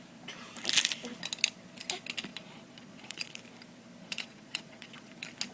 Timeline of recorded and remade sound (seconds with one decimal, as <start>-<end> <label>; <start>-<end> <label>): 0.0-2.3 recorded; 2.3-3.3 remade; 3.3-4.0 recorded; 4.0-5.1 remade; 5.1-5.5 recorded